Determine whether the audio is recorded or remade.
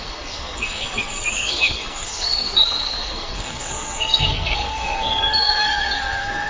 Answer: remade